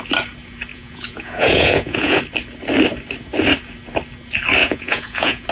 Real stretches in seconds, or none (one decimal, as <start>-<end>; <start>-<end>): 0.0-0.7; 2.2-4.6